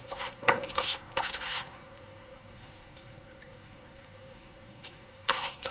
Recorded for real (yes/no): no